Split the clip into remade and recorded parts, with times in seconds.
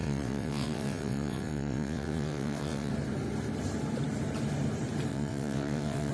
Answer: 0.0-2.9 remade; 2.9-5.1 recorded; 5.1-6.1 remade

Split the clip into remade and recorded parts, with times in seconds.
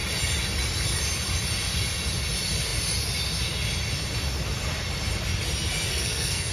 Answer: 0.0-5.9 recorded; 5.9-6.5 remade